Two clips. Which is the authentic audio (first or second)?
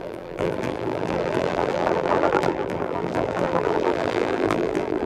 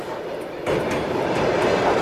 second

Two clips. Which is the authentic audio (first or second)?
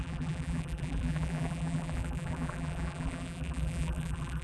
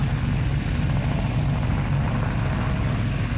second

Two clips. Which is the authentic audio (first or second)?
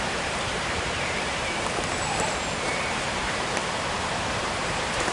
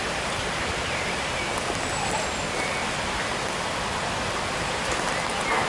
second